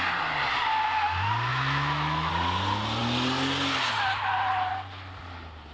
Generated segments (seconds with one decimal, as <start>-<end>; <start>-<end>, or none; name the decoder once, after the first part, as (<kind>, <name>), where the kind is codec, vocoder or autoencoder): 1.5-2.3 (autoencoder, DAC-VAE)

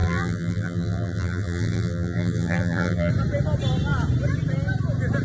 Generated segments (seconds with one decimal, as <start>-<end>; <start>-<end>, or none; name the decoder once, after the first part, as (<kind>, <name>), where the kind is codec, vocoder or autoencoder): 0.0-3.1 (vocoder, BigVGAN v2)